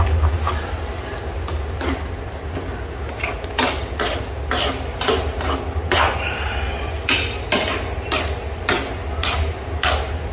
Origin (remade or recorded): recorded